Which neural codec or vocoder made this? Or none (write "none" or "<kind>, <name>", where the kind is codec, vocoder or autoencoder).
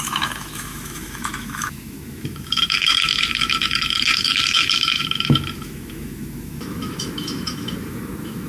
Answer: autoencoder, DAC-VAE